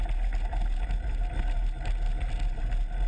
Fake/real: real